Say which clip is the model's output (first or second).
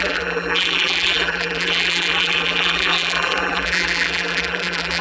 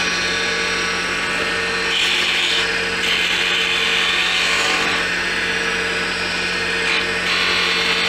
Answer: first